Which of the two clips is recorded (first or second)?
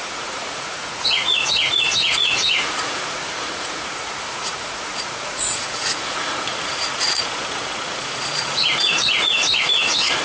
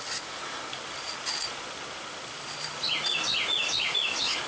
second